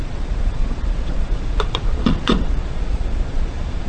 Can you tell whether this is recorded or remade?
remade